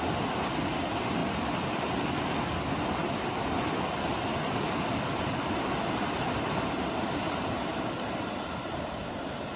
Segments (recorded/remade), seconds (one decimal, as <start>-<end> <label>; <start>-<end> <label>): 0.0-9.6 recorded